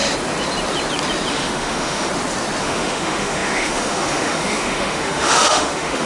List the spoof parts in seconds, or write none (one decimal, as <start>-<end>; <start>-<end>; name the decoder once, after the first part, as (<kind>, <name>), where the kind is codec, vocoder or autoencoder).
1.3-2.1 (autoencoder, DAC-VAE); 2.6-6.1